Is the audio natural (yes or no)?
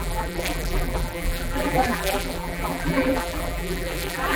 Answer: no